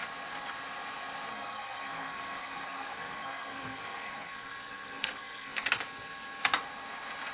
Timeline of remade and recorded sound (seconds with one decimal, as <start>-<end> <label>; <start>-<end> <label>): 0.0-1.3 recorded; 1.3-5.7 remade; 5.7-7.3 recorded